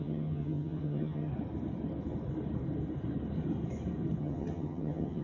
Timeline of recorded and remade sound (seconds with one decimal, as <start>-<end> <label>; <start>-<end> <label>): 0.0-1.3 remade; 1.3-4.2 recorded; 4.2-5.2 remade